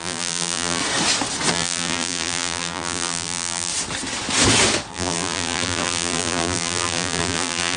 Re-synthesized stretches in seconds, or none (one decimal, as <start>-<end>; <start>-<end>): 0.0-0.8; 1.5-3.7; 4.9-7.8